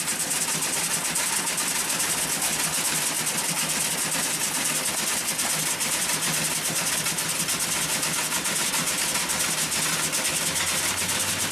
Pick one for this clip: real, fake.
real